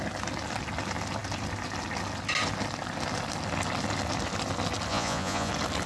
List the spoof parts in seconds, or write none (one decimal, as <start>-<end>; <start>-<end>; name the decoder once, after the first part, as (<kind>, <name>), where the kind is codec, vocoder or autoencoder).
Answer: 4.9-5.5 (vocoder, Vocos)